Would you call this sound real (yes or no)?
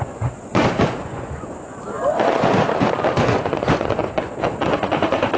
no